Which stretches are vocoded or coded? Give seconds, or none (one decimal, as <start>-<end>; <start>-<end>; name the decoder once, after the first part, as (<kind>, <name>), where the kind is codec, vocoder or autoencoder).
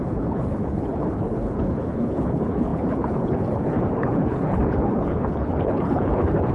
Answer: 0.0-6.5 (codec, HILCodec)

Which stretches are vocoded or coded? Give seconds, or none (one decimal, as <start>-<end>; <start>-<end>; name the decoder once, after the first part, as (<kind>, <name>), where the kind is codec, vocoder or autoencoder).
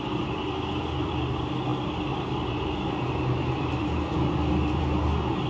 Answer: none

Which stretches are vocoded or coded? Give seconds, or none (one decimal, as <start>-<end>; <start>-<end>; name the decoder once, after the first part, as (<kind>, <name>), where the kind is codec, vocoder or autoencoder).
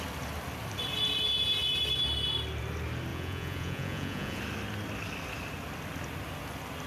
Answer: 3.1-4.4 (vocoder, Vocos)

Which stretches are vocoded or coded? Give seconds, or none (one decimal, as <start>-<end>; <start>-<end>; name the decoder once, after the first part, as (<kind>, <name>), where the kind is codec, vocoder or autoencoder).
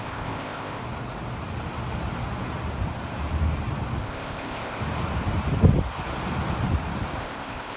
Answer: 0.0-0.8 (codec, ZipCodec); 4.0-4.8; 7.2-7.8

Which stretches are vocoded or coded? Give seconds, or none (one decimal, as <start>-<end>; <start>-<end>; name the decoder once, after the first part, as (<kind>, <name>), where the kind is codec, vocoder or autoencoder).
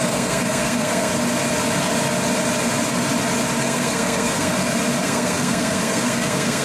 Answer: 0.0-1.1 (codec, SNAC); 3.6-4.5; 5.0-6.6